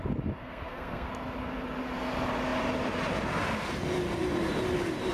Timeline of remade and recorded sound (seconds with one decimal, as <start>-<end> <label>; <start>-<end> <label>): 0.0-0.4 recorded; 0.4-1.1 remade; 1.1-5.1 recorded